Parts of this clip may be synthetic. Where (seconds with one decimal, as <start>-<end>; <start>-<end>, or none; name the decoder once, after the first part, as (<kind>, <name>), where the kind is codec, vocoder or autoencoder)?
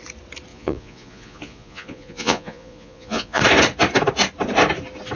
0.5-3.4 (vocoder, Vocos)